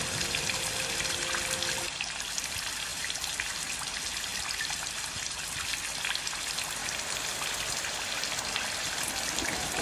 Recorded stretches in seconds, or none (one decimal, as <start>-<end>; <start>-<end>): 0.0-2.9; 3.5-6.8; 7.3-9.8